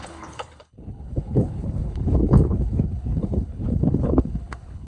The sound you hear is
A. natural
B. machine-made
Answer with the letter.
B